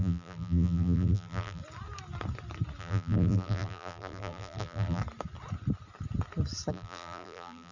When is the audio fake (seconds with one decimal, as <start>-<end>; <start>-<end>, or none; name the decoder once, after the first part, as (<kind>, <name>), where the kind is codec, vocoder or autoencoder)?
0.0-1.6 (vocoder, BigVGAN v2); 2.8-5.0; 6.7-7.7